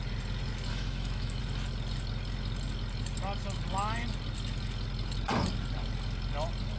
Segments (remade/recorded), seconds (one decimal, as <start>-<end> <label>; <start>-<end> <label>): 0.0-0.7 recorded; 0.7-1.4 remade; 1.4-6.8 recorded